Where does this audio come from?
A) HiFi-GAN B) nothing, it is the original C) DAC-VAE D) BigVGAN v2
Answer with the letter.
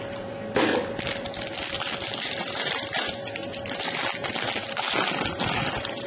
D